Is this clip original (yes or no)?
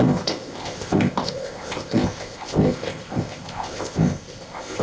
no